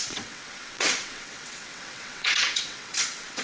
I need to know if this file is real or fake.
fake